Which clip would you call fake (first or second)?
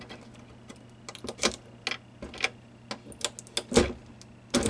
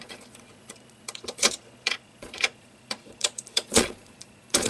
second